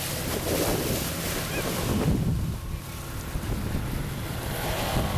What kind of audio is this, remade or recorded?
recorded